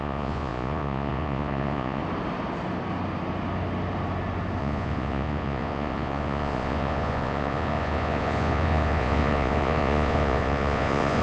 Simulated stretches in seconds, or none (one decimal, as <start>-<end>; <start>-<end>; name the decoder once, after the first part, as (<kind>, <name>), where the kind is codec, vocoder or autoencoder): 0.0-2.0 (vocoder, Vocos); 4.6-11.2